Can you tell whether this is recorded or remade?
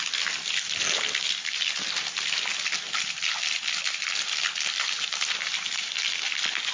recorded